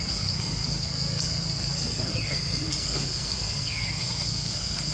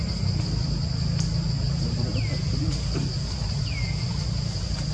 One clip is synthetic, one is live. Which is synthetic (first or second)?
first